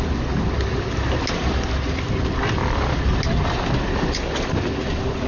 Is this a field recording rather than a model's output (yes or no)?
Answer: yes